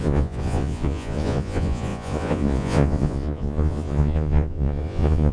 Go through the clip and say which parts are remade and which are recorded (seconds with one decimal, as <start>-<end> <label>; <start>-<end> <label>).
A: 0.0-5.3 remade